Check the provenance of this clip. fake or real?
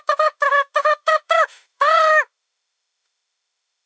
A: fake